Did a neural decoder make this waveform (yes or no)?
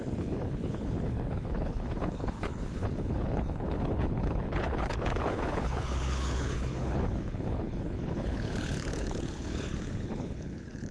yes